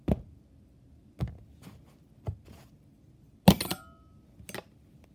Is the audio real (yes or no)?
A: yes